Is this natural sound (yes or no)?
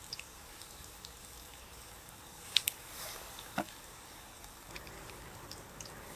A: no